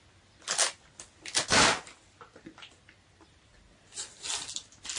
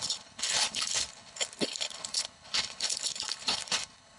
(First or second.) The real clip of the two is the first